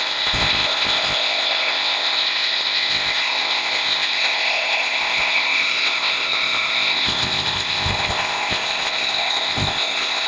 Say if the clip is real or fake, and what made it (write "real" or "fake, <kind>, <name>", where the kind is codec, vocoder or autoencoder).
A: fake, codec, ZipCodec